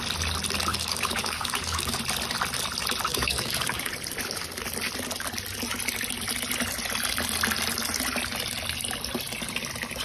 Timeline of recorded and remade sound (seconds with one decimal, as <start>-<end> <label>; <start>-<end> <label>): 0.0-0.7 recorded; 0.7-2.0 remade; 2.0-3.1 recorded; 3.1-3.9 remade; 3.9-10.0 recorded